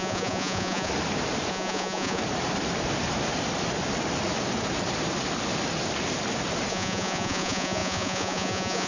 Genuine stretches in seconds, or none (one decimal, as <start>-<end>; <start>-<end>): 0.9-1.5; 2.2-6.7